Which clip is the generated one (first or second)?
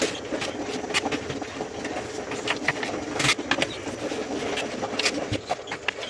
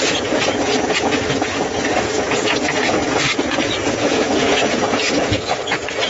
second